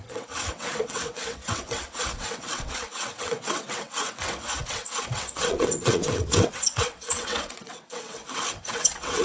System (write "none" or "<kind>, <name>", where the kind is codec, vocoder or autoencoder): vocoder, WaveNeXt